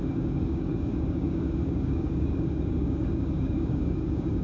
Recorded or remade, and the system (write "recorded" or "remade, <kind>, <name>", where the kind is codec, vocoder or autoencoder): remade, codec, DAC